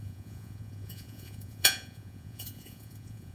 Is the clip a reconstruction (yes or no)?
yes